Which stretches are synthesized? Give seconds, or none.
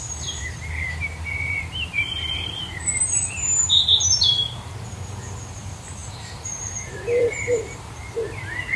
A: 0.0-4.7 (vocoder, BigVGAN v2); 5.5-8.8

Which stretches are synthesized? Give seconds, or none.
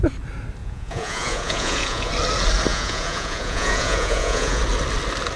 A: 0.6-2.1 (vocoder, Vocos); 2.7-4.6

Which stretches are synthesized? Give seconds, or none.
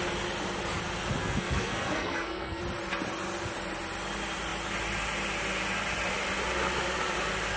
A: 1.2-2.6 (codec, SNAC)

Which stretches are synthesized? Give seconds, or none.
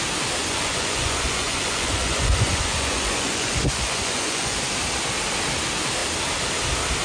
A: 0.4-4.6 (vocoder, Vocos)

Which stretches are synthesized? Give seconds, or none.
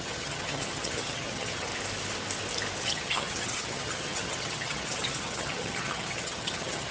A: 0.0-1.7 (vocoder, HiFi-GAN); 2.8-6.9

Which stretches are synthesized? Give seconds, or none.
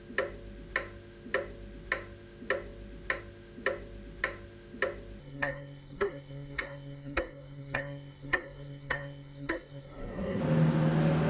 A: 5.2-10.4 (codec, SNAC)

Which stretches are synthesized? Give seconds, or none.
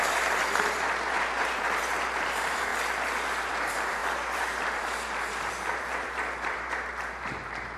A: 0.0-2.7 (vocoder, BigVGAN v2); 3.5-7.8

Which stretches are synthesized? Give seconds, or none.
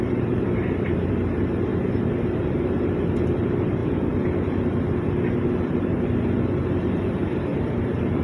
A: 0.0-3.8 (vocoder, BigVGAN v2); 5.5-8.2